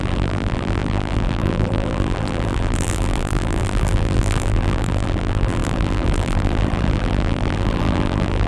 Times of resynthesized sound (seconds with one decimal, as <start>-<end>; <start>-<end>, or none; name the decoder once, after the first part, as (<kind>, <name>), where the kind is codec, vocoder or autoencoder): 0.0-8.5 (vocoder, BigVGAN v2)